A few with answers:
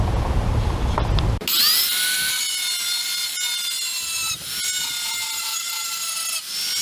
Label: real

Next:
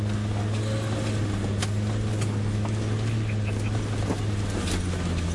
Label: real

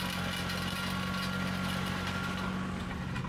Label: real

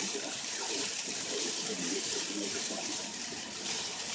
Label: fake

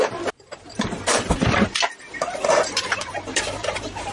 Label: fake